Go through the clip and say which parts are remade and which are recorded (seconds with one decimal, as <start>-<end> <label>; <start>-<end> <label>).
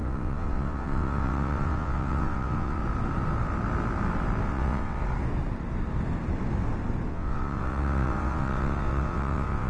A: 0.0-2.8 remade; 2.8-4.5 recorded; 4.5-5.0 remade; 5.0-7.1 recorded; 7.1-9.7 remade